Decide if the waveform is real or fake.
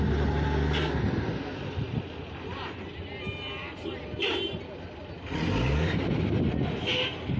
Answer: real